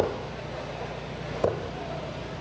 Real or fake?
real